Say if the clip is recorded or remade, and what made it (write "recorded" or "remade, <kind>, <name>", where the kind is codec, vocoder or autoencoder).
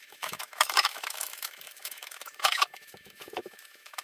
remade, autoencoder, DAC-VAE